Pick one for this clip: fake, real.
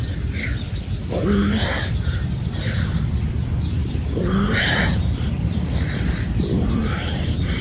fake